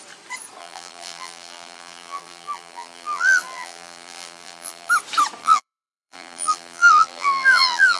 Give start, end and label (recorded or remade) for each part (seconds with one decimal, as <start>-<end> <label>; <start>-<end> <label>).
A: 0.0-0.6 recorded; 0.6-4.9 remade; 4.9-5.4 recorded; 5.4-8.0 remade